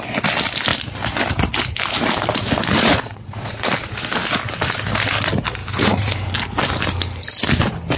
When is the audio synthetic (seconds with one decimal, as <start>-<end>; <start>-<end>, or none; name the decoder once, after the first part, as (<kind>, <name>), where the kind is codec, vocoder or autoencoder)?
2.7-3.7 (vocoder, Vocos); 5.6-6.1